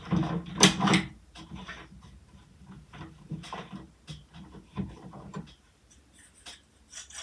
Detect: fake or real real